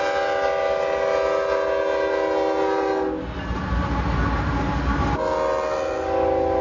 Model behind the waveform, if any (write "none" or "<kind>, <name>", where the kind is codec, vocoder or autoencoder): none